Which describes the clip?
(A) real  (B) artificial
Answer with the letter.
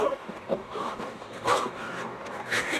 B